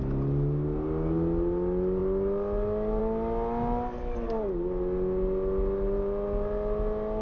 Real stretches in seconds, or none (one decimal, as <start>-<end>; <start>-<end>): 0.0-7.2